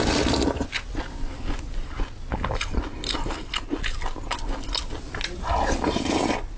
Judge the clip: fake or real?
real